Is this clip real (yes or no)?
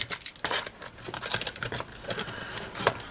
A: yes